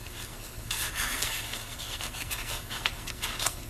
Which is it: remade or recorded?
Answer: remade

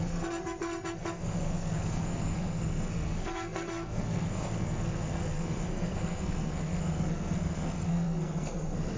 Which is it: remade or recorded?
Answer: remade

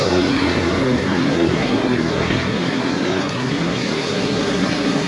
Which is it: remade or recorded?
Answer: remade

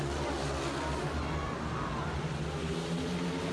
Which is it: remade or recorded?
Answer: recorded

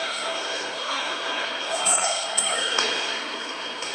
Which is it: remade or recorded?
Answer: remade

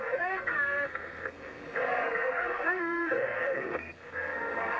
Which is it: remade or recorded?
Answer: remade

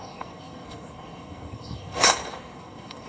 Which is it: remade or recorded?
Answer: remade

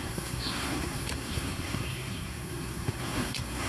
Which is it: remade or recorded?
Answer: remade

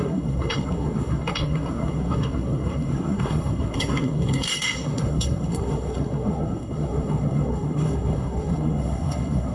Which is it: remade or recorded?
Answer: remade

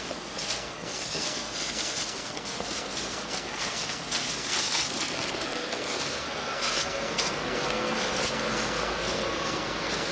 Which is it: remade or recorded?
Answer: remade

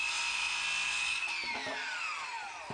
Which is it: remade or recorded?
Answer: recorded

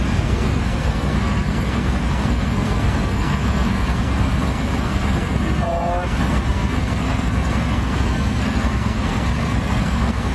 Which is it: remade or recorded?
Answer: remade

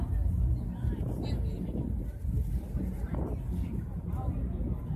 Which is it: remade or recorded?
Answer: recorded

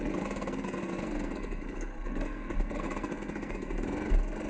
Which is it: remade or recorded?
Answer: remade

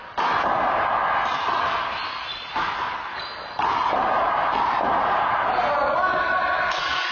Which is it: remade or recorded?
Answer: recorded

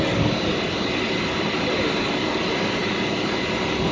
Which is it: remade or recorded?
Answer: recorded